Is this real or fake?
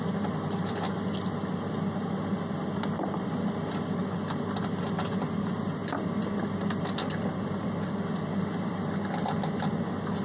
real